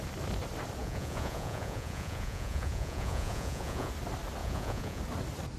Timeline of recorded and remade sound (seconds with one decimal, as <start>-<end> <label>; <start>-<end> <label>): 0.0-0.8 recorded; 0.8-3.9 remade; 3.9-4.4 recorded; 4.4-5.0 remade; 5.0-5.6 recorded